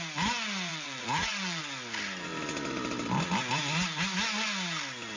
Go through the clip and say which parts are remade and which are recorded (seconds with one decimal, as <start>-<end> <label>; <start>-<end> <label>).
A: 0.0-0.7 recorded; 0.7-1.6 remade; 1.6-5.2 recorded